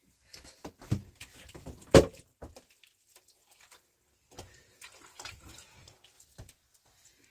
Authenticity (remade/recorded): recorded